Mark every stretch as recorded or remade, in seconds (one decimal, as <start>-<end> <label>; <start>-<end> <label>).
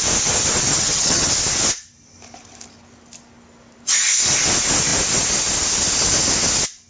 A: 0.0-0.7 recorded; 0.7-1.3 remade; 1.3-6.9 recorded